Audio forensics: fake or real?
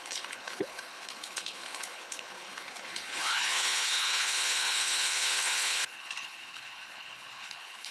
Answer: fake